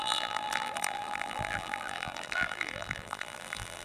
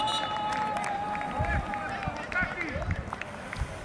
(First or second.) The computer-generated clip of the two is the first